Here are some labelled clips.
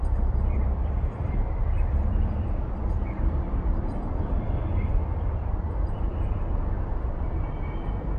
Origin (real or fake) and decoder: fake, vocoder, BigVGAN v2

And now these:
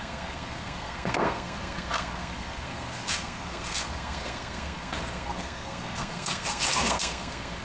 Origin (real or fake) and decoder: fake, codec, SNAC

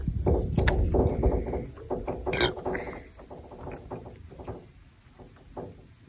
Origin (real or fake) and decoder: real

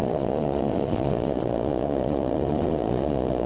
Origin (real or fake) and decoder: fake, vocoder, Vocos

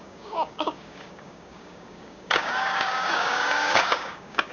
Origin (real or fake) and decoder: fake, codec, DAC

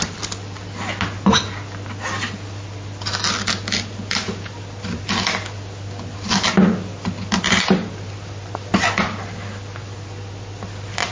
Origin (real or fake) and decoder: real